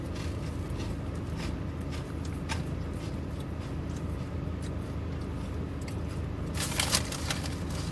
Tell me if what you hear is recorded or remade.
recorded